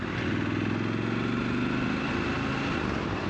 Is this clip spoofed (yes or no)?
no